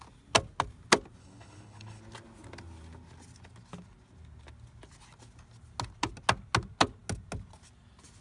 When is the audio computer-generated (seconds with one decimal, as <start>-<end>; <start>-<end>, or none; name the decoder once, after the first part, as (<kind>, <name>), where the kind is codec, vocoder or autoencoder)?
1.2-2.0 (codec, HILCodec)